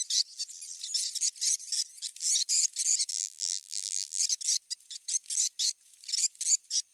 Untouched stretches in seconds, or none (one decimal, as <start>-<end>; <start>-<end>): 0.0-3.1; 4.2-6.9